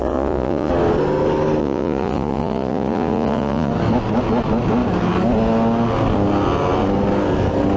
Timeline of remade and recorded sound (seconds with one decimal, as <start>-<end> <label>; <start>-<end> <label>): 0.0-0.7 remade; 0.7-1.6 recorded; 1.6-3.7 remade; 3.7-7.8 recorded